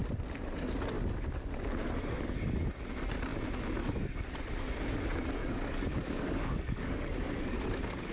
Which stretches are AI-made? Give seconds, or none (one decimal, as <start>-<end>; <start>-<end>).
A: 5.4-7.3